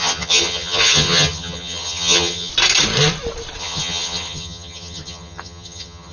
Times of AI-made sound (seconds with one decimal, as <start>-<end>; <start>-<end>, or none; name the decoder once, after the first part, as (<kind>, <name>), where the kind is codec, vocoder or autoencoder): 0.0-2.5 (vocoder, HiFi-GAN); 3.6-6.1